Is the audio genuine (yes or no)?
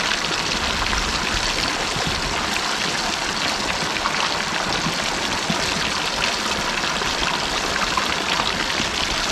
yes